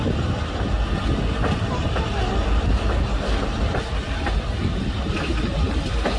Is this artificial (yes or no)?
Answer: no